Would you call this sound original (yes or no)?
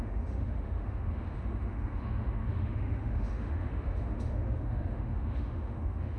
no